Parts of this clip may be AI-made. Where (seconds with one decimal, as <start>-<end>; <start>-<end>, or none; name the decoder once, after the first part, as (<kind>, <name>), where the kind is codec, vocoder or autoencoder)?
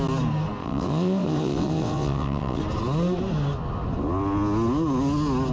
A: 0.6-2.6 (vocoder, WaveNeXt)